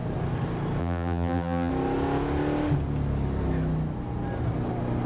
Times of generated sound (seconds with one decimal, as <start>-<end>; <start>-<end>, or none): 0.8-1.7